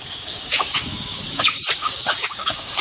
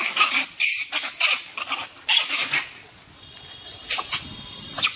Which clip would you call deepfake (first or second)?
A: first